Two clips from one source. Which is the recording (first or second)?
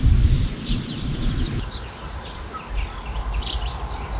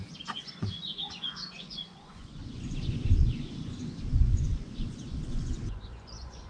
first